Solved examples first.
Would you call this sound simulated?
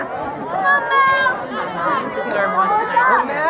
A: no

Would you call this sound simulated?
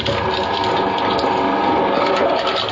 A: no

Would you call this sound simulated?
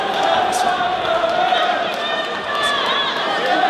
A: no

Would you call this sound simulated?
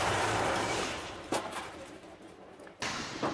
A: yes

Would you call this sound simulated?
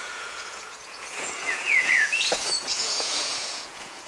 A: yes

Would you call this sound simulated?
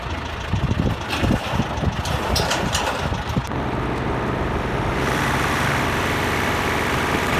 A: no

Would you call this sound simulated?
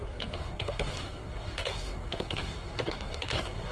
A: yes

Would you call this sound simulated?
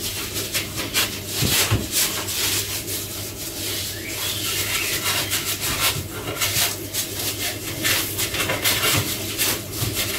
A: no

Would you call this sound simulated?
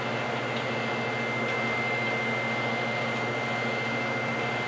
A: no